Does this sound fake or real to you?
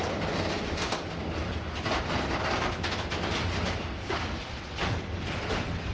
real